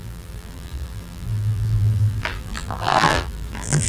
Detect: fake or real fake